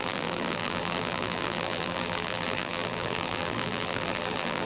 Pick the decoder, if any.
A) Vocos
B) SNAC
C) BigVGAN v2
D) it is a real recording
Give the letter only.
C